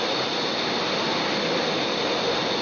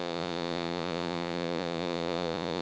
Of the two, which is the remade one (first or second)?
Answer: second